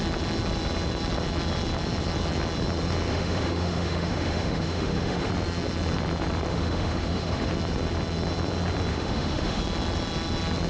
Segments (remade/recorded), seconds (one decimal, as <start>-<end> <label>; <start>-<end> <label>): 0.0-3.1 recorded; 3.1-5.3 remade; 5.3-6.5 recorded; 6.5-7.5 remade; 7.5-8.9 recorded; 8.9-9.6 remade; 9.6-10.7 recorded